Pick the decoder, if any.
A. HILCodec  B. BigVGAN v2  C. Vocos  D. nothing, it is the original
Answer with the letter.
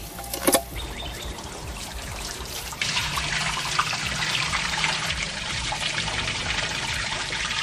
B